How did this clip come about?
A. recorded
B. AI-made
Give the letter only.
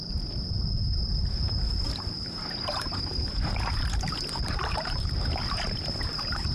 B